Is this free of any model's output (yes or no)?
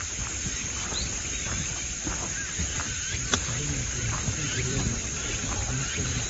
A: yes